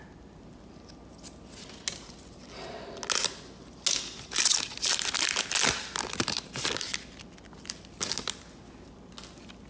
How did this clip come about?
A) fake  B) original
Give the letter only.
B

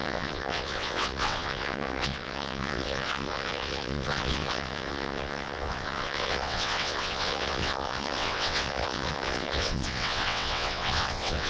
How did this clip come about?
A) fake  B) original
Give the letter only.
A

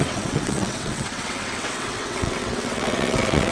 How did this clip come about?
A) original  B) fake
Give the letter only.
B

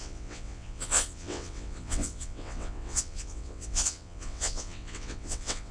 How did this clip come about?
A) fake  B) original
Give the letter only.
A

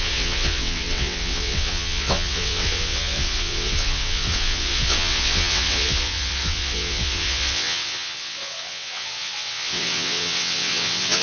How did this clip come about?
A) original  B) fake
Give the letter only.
B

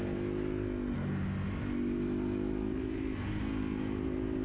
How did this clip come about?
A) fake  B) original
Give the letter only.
B